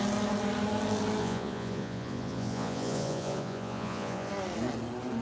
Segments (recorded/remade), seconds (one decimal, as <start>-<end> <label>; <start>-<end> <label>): 0.0-1.2 recorded; 1.2-4.3 remade; 4.3-5.2 recorded

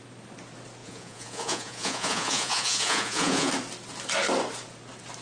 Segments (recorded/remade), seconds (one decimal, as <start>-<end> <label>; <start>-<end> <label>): 0.0-0.8 recorded; 0.8-3.5 remade; 3.5-5.2 recorded

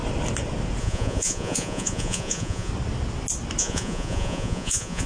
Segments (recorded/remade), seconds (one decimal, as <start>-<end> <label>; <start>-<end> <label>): 0.0-0.8 recorded; 0.8-2.7 remade; 2.7-3.6 recorded; 3.6-5.1 remade

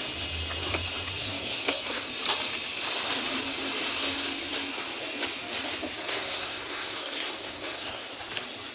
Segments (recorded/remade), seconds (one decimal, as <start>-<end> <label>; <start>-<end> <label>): 0.0-1.2 recorded; 1.2-2.1 remade; 2.1-6.0 recorded; 6.0-8.1 remade; 8.1-8.7 recorded

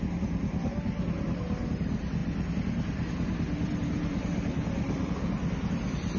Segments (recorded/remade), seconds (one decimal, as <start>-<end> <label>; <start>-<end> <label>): 0.0-6.2 recorded

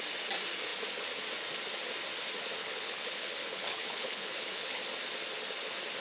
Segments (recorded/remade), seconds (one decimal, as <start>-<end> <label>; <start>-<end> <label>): 0.0-2.6 recorded; 2.6-4.8 remade; 4.8-6.0 recorded

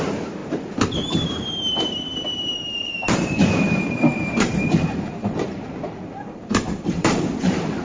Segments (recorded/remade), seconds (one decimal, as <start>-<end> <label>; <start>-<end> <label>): 0.0-7.8 remade

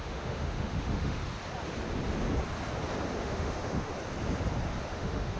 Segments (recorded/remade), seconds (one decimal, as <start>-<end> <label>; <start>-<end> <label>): 0.0-1.2 remade; 1.2-3.2 recorded; 3.2-3.9 remade; 3.9-4.9 recorded; 4.9-5.4 remade